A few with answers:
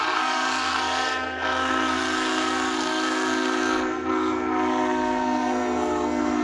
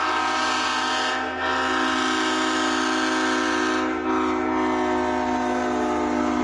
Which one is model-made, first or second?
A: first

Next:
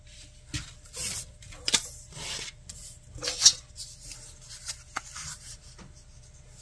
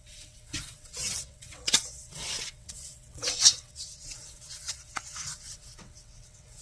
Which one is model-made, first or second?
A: second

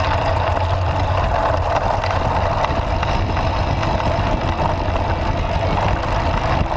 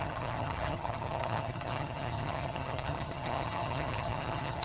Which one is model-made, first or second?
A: second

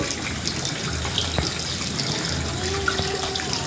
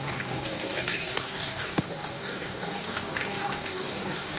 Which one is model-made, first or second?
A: second